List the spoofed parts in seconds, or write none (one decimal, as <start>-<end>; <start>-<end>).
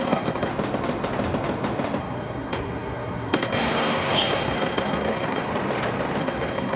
0.0-0.5; 2.0-5.5; 6.2-6.8